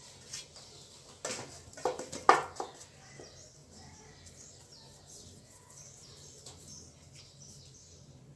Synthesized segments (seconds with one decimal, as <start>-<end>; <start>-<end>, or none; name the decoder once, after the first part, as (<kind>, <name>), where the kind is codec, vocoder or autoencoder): 3.6-4.5 (vocoder, BigVGAN v2)